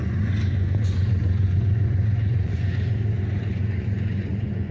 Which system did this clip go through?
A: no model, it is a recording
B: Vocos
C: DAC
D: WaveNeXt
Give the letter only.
B